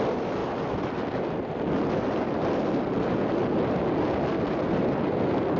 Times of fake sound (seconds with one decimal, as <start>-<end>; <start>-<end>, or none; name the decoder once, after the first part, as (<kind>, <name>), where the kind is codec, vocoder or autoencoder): none